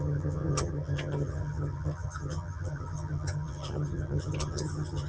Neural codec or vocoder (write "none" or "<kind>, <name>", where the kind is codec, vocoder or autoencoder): vocoder, HiFi-GAN